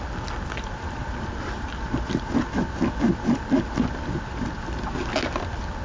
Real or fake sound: real